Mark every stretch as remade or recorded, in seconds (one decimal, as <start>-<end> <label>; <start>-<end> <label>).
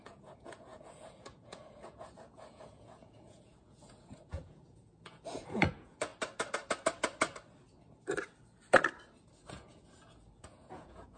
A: 0.0-6.1 remade; 6.1-9.5 recorded; 9.5-11.2 remade